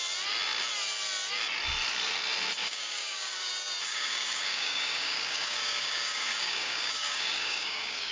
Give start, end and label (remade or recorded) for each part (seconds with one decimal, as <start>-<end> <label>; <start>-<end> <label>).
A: 0.0-2.6 recorded; 2.6-3.5 remade; 3.5-3.9 recorded; 3.9-8.1 remade